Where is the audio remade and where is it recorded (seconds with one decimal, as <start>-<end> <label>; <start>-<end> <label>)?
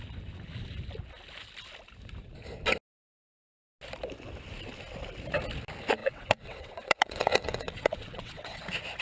0.0-6.0 recorded; 6.0-8.6 remade; 8.6-9.0 recorded